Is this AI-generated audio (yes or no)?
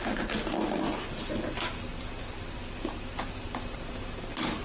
no